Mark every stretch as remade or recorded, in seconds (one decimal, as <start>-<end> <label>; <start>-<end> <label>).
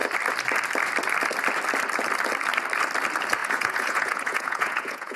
0.0-3.4 recorded; 3.4-5.2 remade